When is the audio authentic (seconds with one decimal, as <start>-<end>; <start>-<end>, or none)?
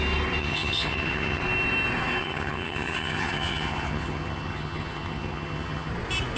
0.0-0.4; 1.4-2.2; 5.9-6.4